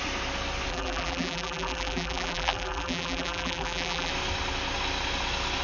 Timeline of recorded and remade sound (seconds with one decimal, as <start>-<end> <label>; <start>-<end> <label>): 0.0-0.7 recorded; 0.7-4.1 remade; 4.1-5.6 recorded

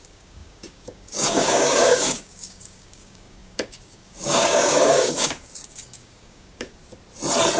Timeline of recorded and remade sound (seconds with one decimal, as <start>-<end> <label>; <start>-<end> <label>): 0.0-6.8 remade; 6.8-7.6 recorded